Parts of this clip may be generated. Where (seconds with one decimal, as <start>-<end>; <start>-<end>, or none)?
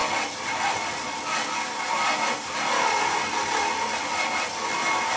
none